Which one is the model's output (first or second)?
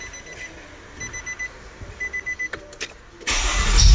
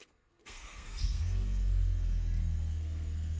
second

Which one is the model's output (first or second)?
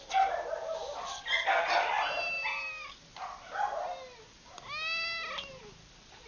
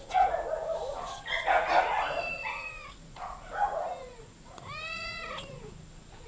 second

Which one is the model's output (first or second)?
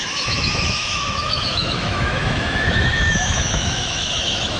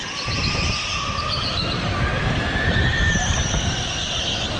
first